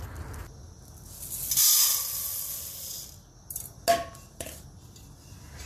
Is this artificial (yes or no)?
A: no